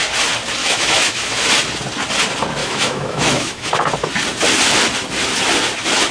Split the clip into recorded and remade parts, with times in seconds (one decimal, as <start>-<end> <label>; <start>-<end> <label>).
0.0-0.6 recorded; 0.6-1.5 remade; 1.5-2.6 recorded; 2.6-3.7 remade; 3.7-6.1 recorded